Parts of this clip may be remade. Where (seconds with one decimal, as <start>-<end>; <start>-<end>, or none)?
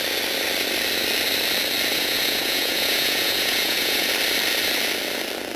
1.9-4.1